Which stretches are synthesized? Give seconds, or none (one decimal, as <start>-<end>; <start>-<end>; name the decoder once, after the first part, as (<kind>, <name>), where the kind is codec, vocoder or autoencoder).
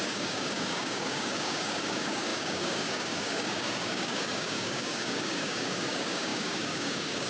0.0-7.3 (codec, DAC)